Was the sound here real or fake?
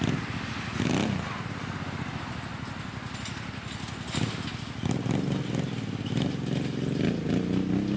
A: real